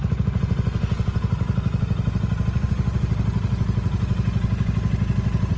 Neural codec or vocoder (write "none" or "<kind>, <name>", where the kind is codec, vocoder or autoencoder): none